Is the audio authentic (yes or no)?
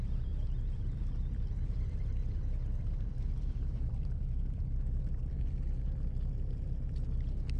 no